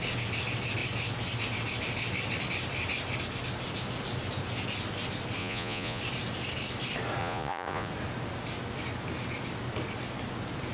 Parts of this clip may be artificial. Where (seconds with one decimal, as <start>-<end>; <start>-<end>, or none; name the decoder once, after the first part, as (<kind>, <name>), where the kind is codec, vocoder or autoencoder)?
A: 5.4-6.0 (vocoder, Vocos); 7.2-7.9